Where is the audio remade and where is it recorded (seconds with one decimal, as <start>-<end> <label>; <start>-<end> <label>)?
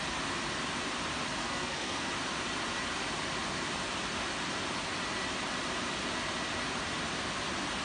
0.0-1.4 recorded; 1.4-2.1 remade; 2.1-7.8 recorded